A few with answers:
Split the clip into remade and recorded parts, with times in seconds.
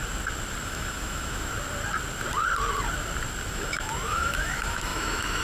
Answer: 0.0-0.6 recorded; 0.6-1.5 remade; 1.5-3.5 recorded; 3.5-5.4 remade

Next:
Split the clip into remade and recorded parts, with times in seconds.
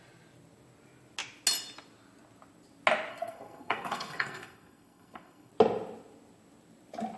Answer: 0.0-3.1 recorded; 3.1-5.5 remade; 5.5-7.2 recorded